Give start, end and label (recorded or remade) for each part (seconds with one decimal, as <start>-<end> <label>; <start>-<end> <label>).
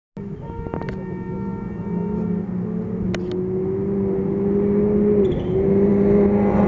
0.0-6.7 recorded